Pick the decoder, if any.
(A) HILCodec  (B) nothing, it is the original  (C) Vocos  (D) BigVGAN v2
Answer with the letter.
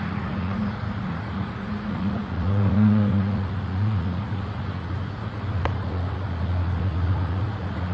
C